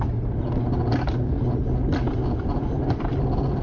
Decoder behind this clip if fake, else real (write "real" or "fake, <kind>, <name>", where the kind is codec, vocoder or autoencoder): real